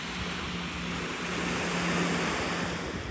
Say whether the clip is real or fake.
real